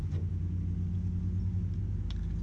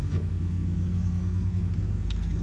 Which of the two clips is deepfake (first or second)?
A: second